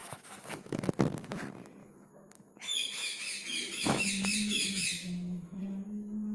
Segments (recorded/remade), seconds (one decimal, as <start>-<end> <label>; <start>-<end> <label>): 0.0-0.9 remade; 0.9-1.8 recorded; 1.8-5.6 remade; 5.6-6.3 recorded